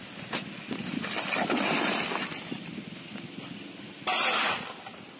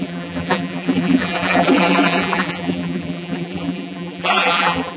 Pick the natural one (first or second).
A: first